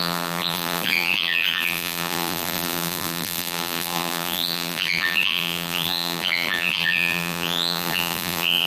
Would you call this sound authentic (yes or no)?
no